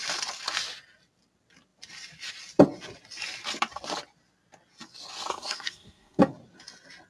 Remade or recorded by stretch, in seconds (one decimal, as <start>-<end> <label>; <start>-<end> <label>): 0.0-5.3 recorded; 5.3-6.2 remade; 6.2-7.1 recorded